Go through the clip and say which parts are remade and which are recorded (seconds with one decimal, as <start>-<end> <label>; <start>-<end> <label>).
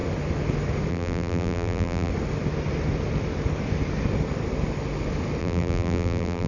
0.0-0.9 recorded; 0.9-2.1 remade; 2.1-5.4 recorded; 5.4-6.5 remade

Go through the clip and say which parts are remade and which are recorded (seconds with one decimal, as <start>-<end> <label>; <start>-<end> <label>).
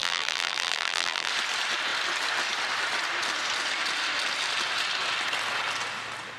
0.0-1.3 remade; 1.3-6.4 recorded